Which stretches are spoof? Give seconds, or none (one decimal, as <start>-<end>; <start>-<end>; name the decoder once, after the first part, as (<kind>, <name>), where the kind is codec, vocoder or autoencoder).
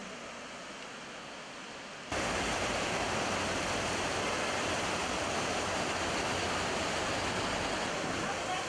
none